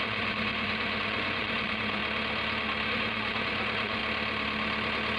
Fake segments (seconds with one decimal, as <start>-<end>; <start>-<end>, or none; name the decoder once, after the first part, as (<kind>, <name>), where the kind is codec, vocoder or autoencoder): 0.0-2.0 (vocoder, Vocos); 2.9-4.0